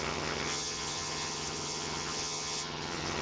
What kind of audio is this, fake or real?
fake